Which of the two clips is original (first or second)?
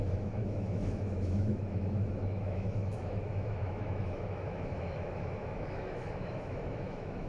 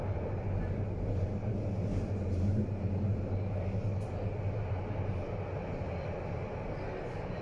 second